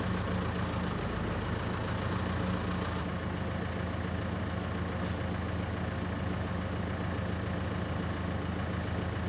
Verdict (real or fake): real